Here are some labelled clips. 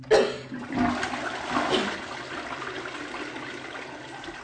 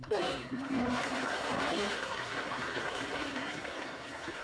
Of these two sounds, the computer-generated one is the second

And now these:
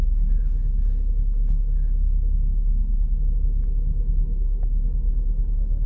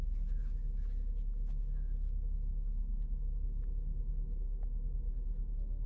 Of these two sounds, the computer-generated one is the first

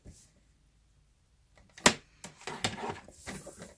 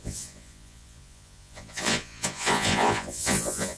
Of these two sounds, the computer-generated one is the second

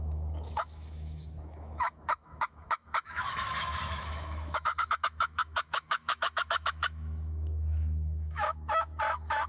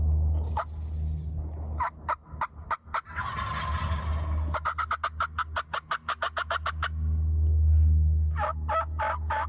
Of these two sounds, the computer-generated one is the first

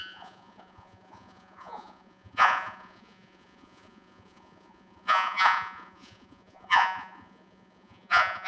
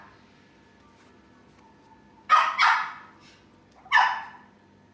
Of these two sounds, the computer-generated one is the first